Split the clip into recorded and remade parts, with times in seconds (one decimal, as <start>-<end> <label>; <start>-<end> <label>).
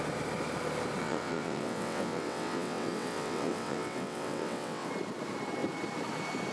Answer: 0.0-1.0 recorded; 1.0-4.9 remade; 4.9-6.5 recorded